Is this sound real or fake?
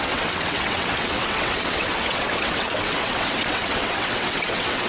fake